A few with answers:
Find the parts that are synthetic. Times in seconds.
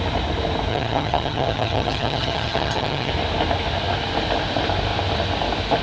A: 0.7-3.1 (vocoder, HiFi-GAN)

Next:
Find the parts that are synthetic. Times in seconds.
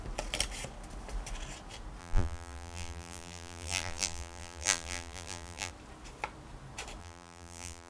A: 2.0-5.7 (vocoder, BigVGAN v2); 7.0-7.9